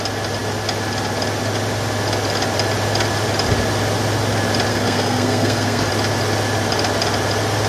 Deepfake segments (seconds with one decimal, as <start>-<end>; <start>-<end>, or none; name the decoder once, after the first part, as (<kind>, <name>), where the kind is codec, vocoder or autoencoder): 4.7-5.9 (codec, SNAC)

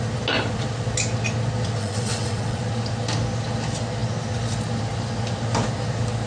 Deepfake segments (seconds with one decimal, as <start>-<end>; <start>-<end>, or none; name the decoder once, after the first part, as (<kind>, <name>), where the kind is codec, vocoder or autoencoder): 1.8-2.6 (vocoder, WaveNeXt)

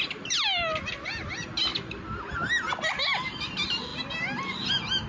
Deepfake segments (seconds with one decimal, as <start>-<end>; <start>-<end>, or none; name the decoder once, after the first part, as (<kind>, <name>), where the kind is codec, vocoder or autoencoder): none